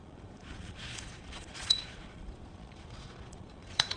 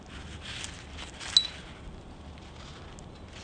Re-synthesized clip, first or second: first